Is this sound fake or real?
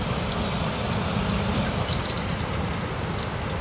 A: real